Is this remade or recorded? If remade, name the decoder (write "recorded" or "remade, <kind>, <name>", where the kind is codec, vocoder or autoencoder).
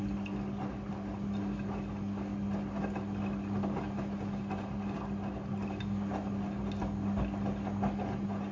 recorded